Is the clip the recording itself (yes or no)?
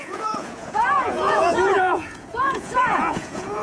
no